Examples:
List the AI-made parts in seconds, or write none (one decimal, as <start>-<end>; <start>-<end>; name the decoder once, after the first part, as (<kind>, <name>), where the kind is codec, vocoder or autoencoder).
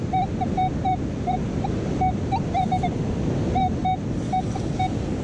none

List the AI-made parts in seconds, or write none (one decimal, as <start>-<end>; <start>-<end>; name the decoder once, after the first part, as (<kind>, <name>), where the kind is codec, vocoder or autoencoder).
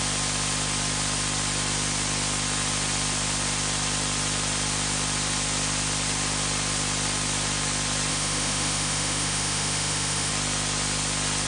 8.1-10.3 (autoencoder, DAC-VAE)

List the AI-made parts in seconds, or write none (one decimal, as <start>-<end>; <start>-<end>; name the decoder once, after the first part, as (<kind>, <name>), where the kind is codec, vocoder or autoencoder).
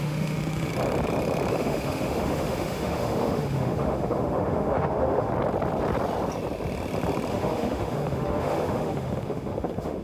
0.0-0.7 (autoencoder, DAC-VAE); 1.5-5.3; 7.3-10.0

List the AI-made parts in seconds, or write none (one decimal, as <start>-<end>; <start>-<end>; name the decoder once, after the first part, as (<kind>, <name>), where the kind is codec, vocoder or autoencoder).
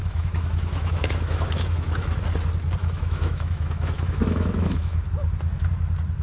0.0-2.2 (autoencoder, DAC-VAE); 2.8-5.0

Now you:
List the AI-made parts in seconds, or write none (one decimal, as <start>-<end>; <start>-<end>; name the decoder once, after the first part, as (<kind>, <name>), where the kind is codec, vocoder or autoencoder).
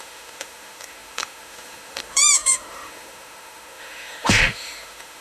0.0-5.2 (autoencoder, DAC-VAE)